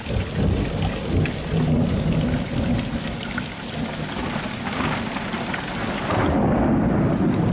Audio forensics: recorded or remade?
recorded